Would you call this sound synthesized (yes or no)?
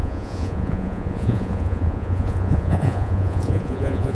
yes